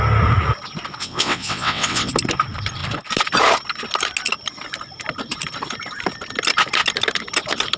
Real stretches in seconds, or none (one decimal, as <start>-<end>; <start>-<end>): 0.0-1.0; 2.1-7.8